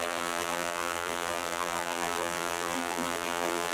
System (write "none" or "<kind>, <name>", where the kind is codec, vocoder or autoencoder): vocoder, BigVGAN v2